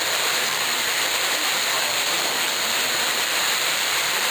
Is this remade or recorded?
remade